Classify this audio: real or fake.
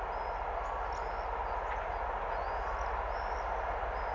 real